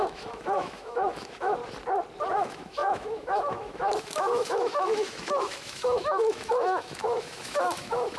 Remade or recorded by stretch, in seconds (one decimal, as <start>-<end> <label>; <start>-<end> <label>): 0.0-1.6 remade; 1.6-2.3 recorded; 2.3-8.2 remade